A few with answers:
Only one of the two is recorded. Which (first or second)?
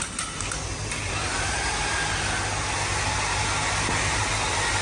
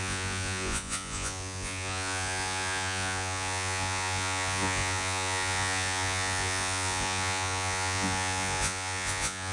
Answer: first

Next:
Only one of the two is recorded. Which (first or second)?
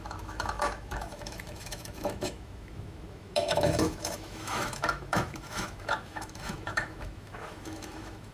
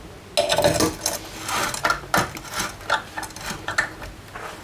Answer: second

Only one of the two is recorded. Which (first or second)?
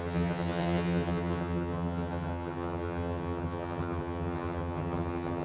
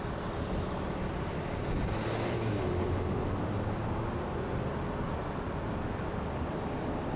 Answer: second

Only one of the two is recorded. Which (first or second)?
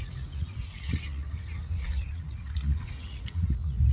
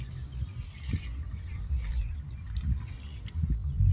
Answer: second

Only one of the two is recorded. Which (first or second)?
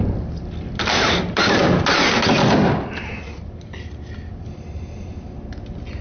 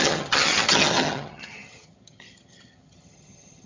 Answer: first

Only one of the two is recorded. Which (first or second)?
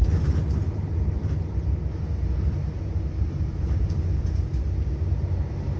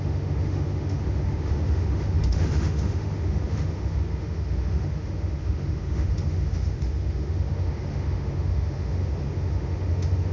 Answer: first